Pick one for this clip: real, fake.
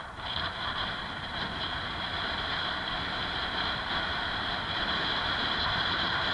fake